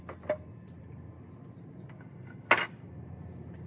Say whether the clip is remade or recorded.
recorded